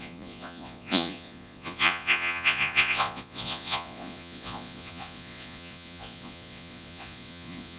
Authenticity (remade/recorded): remade